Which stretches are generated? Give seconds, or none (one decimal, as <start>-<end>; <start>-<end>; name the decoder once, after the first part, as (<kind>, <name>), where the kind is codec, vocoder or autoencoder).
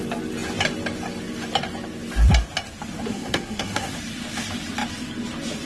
3.1-3.9 (codec, SNAC)